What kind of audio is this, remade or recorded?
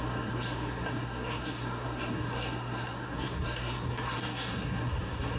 remade